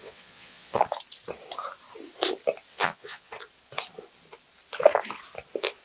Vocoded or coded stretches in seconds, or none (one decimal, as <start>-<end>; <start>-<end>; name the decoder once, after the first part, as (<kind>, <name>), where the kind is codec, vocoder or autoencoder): 0.0-0.8 (vocoder, Vocos); 2.7-3.3